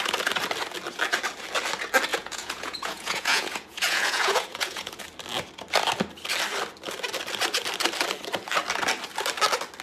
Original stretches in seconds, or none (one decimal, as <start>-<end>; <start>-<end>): 0.0-2.1; 5.0-9.8